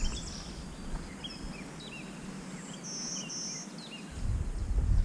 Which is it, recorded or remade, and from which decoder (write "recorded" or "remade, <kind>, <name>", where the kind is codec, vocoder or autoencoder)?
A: recorded